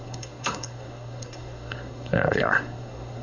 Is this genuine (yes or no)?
no